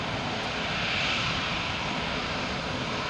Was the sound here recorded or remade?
recorded